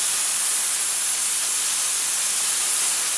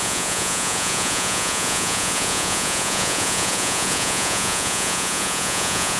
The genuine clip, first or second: first